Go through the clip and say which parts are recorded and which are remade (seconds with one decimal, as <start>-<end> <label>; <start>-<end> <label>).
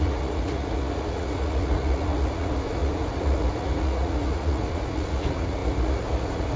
0.0-6.6 remade